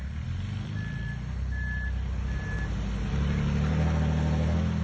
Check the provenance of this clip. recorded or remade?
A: recorded